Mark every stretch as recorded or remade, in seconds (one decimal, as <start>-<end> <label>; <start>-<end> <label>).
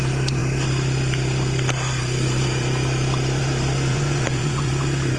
0.0-3.9 recorded; 3.9-4.7 remade; 4.7-5.2 recorded